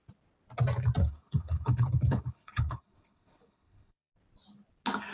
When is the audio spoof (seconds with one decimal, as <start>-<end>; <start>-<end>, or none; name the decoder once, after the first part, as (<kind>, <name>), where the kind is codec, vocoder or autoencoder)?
1.0-4.1 (codec, HILCodec)

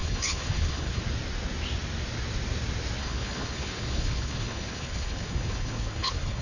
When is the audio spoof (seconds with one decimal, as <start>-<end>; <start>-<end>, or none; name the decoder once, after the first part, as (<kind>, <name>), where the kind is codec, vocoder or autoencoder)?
0.0-1.0 (codec, HILCodec); 3.0-6.4

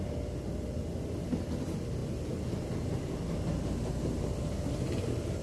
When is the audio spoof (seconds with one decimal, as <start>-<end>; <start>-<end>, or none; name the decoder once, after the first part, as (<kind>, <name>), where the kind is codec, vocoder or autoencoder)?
none

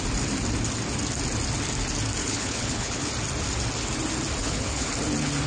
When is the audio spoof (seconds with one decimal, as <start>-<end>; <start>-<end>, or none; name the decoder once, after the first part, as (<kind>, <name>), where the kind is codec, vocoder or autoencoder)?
2.2-3.1 (codec, HILCodec); 4.4-4.9

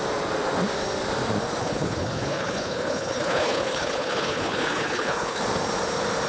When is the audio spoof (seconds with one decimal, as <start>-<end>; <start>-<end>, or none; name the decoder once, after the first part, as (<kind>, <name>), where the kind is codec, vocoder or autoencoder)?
1.6-5.4 (codec, HILCodec)

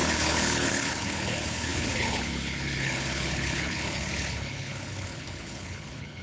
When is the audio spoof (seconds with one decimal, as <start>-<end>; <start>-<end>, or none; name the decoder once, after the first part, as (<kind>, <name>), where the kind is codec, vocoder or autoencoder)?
0.0-6.2 (codec, HILCodec)

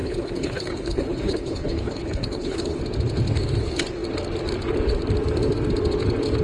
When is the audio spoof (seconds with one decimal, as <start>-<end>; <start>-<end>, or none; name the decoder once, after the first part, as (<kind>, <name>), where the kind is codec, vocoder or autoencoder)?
0.0-2.8 (codec, HILCodec)

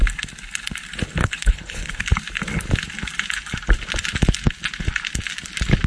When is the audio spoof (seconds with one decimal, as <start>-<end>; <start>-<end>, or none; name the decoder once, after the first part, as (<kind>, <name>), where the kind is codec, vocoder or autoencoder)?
1.2-2.0 (codec, HILCodec)